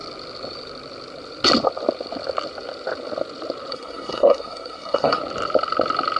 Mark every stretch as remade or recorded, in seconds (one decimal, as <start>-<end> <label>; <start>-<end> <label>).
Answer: 0.0-3.7 recorded; 3.7-5.2 remade; 5.2-6.2 recorded